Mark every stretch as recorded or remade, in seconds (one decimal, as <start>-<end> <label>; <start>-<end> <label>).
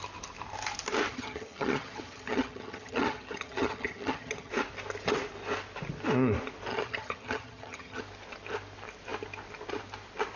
0.0-1.1 recorded; 1.1-4.5 remade; 4.5-6.7 recorded; 6.7-8.0 remade; 8.0-10.4 recorded